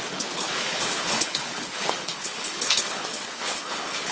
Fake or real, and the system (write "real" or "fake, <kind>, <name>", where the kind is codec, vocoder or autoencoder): fake, codec, HILCodec